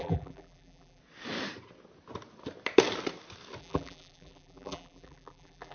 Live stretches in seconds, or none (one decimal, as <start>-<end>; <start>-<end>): 1.0-3.6